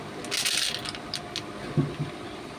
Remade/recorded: recorded